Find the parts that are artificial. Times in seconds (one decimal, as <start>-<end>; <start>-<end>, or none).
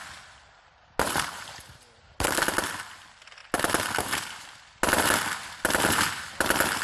none